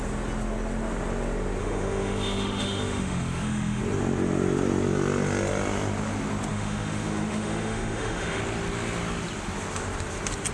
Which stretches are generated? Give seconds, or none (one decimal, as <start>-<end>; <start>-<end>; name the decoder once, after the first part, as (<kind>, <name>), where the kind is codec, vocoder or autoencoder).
1.6-3.8 (autoencoder, DAC-VAE); 6.5-8.4